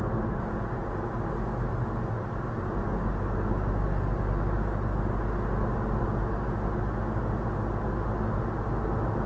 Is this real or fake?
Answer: real